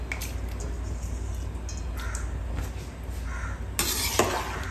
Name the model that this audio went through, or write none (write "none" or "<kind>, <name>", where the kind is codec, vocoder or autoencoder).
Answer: none